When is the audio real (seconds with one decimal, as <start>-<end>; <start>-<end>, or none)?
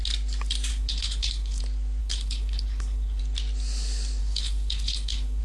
0.0-0.7; 1.6-2.0; 3.2-4.2